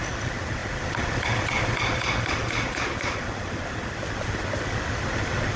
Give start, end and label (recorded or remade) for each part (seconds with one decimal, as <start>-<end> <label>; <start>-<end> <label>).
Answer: 0.0-5.6 recorded